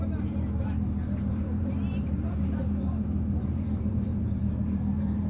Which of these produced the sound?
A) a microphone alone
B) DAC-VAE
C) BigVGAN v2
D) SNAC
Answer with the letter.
C